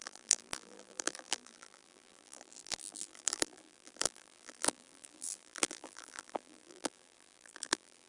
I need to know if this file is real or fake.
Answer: fake